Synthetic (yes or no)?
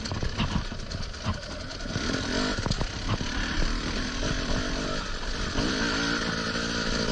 no